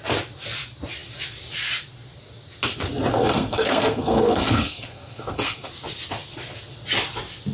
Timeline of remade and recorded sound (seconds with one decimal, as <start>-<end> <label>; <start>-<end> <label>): 0.0-3.1 recorded; 3.1-5.7 remade; 5.7-7.5 recorded